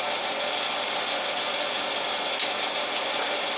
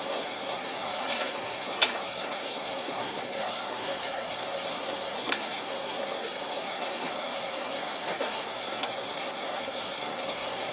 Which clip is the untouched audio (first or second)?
first